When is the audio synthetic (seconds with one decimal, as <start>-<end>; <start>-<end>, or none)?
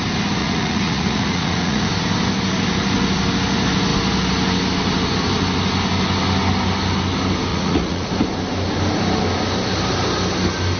0.4-1.9; 7.5-8.1